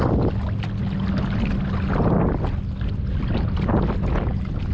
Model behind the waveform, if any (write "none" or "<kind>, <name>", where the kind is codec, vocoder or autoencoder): none